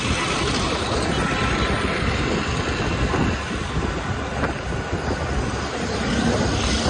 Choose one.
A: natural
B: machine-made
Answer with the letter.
A